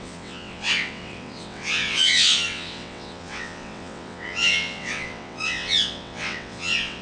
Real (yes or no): no